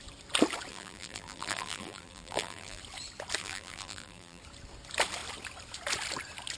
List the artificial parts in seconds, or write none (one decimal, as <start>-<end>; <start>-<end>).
0.7-2.8; 3.4-4.4